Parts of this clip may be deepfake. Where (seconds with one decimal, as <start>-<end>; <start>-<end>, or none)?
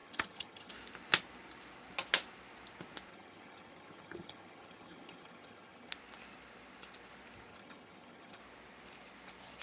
0.0-0.7; 3.1-5.9; 7.5-8.4